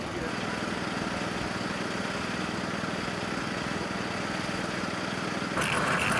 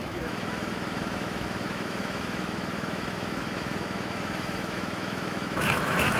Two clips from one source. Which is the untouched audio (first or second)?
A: first